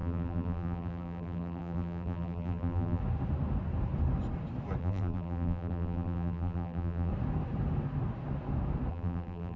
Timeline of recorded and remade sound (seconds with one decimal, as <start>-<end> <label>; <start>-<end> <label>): 0.0-3.0 remade; 3.0-4.8 recorded; 4.8-7.1 remade; 7.1-8.9 recorded; 8.9-9.6 remade